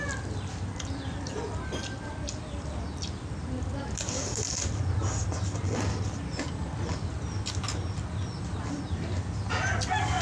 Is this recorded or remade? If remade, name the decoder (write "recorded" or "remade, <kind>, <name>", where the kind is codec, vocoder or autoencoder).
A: recorded